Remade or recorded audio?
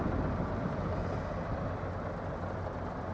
recorded